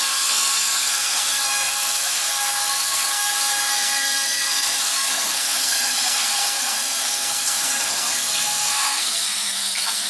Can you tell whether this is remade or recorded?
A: remade